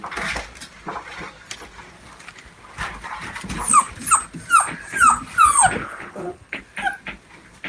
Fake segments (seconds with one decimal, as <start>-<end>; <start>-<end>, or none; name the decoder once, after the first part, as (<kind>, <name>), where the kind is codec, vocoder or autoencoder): 5.8-6.6 (codec, HILCodec)